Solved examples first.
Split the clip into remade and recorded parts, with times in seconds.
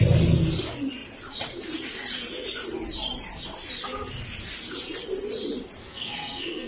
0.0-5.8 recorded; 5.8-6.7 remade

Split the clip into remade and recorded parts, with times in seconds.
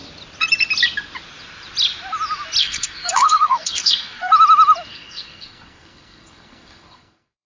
0.0-2.6 recorded; 2.6-4.3 remade; 4.3-4.9 recorded; 4.9-7.5 remade